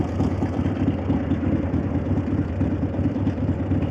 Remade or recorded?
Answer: recorded